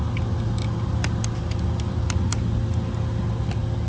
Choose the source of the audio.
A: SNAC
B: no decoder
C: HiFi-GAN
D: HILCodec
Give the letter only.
B